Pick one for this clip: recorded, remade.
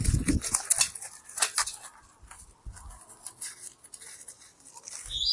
recorded